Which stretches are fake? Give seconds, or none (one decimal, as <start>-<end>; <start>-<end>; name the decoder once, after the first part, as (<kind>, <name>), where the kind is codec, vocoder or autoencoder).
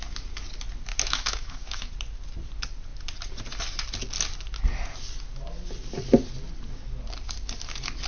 0.9-1.9 (autoencoder, DAC-VAE)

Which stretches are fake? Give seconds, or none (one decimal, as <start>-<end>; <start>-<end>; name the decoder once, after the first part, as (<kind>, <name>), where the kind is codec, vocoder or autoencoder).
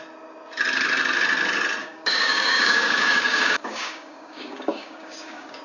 1.8-5.6 (codec, DAC)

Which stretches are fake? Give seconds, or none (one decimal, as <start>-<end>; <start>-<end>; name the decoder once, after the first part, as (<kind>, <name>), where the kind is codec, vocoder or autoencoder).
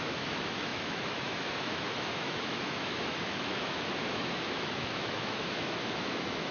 0.0-6.5 (autoencoder, DAC-VAE)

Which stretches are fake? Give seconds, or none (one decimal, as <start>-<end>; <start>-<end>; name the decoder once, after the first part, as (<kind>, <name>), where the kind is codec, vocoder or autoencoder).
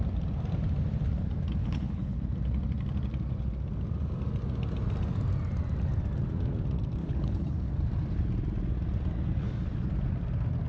1.6-2.2 (codec, HILCodec); 7.0-7.7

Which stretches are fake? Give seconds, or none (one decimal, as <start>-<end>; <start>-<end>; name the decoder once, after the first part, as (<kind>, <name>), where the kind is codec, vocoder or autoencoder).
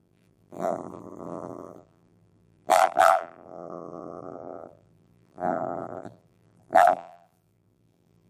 0.0-8.3 (vocoder, BigVGAN v2)